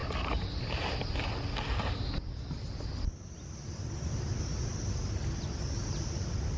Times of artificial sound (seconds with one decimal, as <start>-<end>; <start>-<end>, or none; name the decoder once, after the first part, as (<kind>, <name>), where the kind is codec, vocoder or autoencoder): none